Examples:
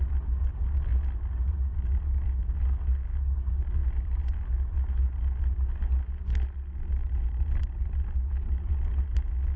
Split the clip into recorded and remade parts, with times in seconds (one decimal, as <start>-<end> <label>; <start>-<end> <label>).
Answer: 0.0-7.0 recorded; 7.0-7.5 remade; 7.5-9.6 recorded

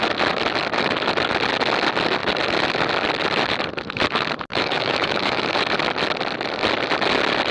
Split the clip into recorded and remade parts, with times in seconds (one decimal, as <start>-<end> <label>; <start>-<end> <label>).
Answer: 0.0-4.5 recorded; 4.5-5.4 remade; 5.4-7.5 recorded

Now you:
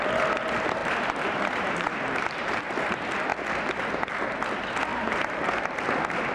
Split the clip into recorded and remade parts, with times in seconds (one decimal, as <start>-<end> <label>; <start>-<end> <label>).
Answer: 0.0-0.8 recorded; 0.8-2.6 remade; 2.6-4.9 recorded; 4.9-5.8 remade; 5.8-6.3 recorded